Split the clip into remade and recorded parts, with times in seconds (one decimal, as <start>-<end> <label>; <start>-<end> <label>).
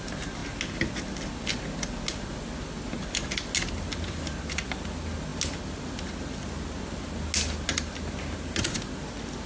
0.0-9.5 recorded